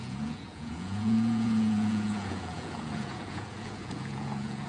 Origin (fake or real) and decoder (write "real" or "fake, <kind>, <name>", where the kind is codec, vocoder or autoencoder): fake, vocoder, Vocos